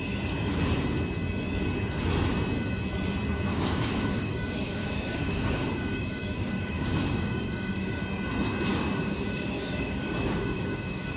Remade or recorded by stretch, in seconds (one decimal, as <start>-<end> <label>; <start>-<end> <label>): 0.0-3.5 recorded; 3.5-8.0 remade; 8.0-8.7 recorded; 8.7-11.2 remade